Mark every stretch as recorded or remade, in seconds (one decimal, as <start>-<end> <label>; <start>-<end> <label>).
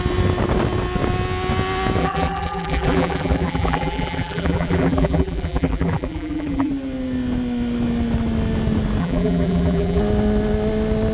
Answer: 0.0-2.0 recorded; 2.0-6.7 remade; 6.7-9.0 recorded; 9.0-10.0 remade; 10.0-11.1 recorded